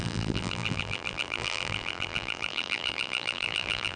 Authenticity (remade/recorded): remade